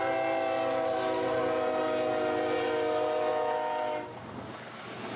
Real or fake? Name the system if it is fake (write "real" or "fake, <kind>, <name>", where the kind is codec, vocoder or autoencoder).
real